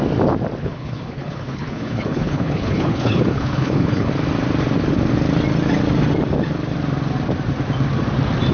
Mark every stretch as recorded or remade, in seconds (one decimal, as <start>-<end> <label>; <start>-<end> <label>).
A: 0.0-0.6 recorded; 0.6-4.1 remade; 4.1-8.5 recorded